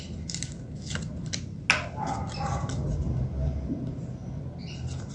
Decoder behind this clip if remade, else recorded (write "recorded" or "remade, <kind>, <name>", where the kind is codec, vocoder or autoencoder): recorded